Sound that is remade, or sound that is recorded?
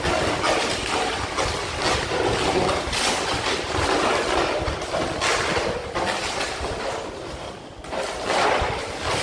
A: recorded